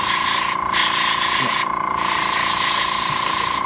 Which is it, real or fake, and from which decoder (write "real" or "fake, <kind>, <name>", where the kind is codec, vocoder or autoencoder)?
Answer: real